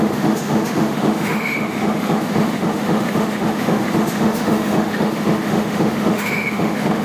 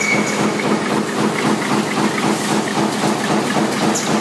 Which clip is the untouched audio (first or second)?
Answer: second